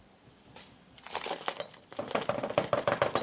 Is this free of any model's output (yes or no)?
yes